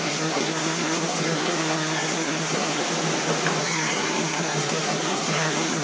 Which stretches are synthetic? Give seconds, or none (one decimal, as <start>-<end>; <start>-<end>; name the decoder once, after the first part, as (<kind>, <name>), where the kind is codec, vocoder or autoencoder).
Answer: 0.0-2.8 (codec, SNAC); 3.6-5.8